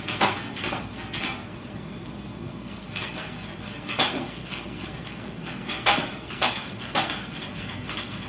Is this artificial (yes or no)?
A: yes